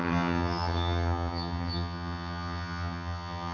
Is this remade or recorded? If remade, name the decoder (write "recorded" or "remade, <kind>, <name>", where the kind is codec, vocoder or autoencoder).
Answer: remade, vocoder, HiFi-GAN